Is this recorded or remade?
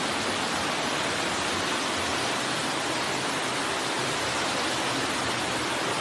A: recorded